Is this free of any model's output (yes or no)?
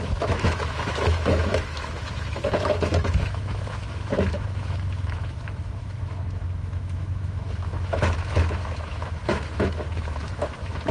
no